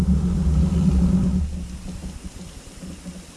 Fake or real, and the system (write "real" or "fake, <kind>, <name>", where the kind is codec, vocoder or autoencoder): real